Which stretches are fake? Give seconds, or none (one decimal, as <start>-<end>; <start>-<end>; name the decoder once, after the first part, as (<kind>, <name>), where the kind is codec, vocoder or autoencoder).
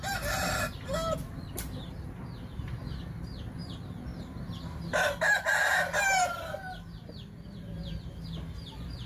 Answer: none